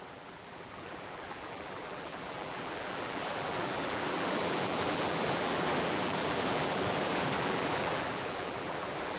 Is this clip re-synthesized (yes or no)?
yes